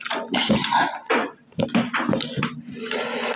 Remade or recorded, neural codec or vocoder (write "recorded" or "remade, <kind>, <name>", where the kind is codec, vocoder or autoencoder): recorded